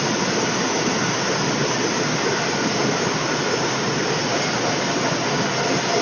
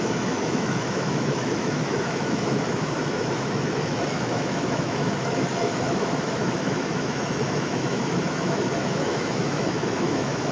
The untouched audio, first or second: first